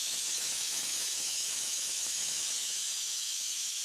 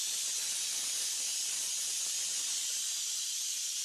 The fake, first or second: first